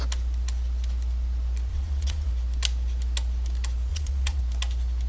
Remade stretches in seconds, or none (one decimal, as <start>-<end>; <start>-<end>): 1.7-2.3; 3.9-4.4